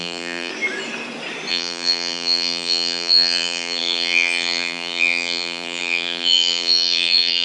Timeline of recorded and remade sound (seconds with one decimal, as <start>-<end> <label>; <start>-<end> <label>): 0.0-0.5 remade; 0.5-1.5 recorded; 1.5-7.4 remade